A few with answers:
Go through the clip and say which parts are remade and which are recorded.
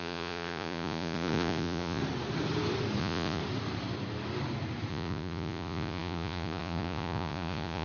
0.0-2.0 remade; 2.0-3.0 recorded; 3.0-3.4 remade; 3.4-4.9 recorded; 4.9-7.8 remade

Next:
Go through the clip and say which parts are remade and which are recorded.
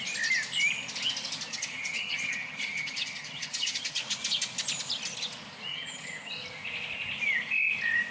0.0-1.5 recorded; 1.5-4.0 remade; 4.0-5.7 recorded; 5.7-6.3 remade; 6.3-8.1 recorded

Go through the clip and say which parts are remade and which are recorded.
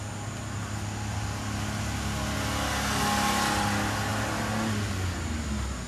0.0-5.9 recorded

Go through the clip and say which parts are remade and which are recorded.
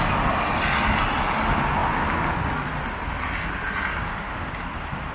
0.0-5.1 recorded